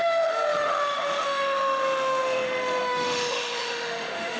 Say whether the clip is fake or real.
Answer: fake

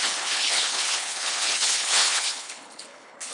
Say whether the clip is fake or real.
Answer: fake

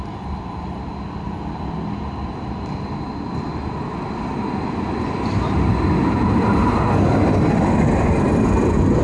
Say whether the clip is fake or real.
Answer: real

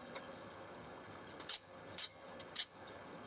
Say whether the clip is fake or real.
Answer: fake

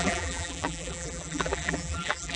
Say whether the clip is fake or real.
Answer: fake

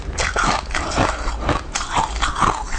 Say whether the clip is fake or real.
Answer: real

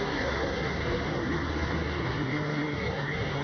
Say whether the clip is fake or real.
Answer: fake